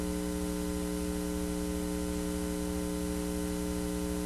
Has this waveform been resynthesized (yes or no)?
no